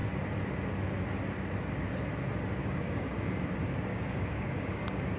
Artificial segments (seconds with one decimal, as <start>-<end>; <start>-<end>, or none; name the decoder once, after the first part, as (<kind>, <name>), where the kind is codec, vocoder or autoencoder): 2.6-3.4 (codec, DAC); 3.9-5.2

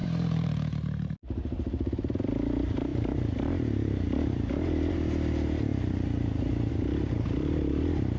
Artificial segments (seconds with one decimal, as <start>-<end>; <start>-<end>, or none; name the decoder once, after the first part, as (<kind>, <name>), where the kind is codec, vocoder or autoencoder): 0.0-5.7 (vocoder, BigVGAN v2); 6.7-8.2

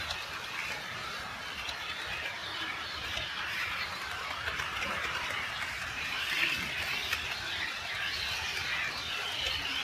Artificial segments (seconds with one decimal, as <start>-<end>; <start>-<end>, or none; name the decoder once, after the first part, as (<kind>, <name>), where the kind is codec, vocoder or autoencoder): 2.4-6.2 (vocoder, BigVGAN v2); 7.0-7.9

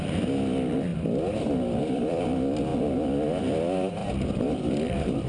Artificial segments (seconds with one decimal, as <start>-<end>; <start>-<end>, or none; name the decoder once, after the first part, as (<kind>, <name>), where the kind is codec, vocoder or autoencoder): 0.0-0.9 (vocoder, BigVGAN v2); 1.8-2.7; 3.4-5.3

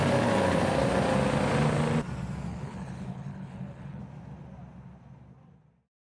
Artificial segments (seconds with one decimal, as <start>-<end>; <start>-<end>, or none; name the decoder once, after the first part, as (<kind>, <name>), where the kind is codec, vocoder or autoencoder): 2.5-4.0 (codec, HILCodec)

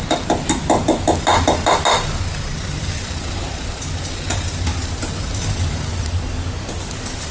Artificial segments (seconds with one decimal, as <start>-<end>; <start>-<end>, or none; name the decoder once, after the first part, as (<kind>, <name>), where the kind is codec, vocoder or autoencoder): none

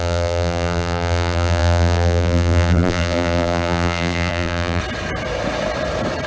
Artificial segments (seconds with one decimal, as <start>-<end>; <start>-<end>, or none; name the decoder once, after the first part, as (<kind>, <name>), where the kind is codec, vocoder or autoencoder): 0.0-4.8 (vocoder, BigVGAN v2)